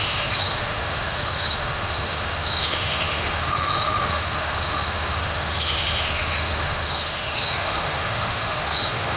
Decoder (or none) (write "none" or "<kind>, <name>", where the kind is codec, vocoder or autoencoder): autoencoder, DAC-VAE